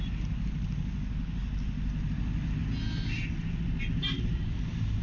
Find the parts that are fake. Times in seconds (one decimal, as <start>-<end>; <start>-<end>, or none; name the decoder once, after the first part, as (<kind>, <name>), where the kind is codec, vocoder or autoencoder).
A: none